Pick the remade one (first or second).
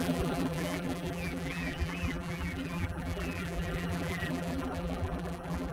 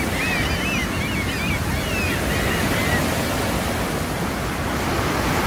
first